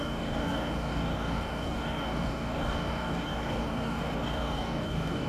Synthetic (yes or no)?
yes